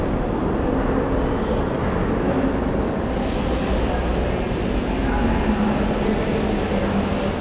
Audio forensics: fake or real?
real